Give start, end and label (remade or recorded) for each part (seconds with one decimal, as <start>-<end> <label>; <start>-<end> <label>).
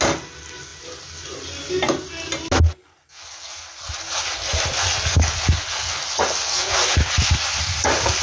0.0-8.2 recorded